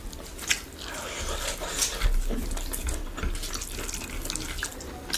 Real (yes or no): yes